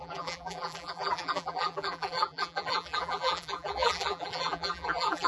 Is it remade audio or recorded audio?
remade